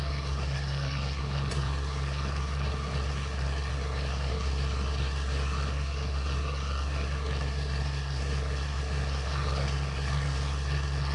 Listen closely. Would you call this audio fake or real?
fake